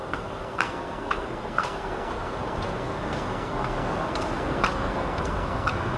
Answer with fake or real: fake